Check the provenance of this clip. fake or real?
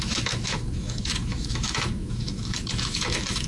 fake